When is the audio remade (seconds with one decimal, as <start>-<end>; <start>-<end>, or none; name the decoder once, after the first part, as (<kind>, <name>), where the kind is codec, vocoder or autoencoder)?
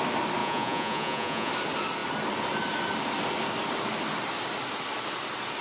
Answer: 0.4-1.5 (vocoder, Vocos)